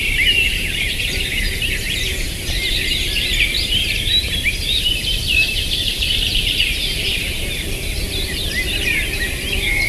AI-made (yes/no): yes